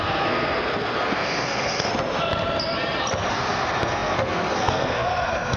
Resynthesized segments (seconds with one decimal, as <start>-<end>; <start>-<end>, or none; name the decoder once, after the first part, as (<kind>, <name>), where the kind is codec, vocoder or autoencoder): 0.0-1.9 (codec, SNAC); 3.3-5.6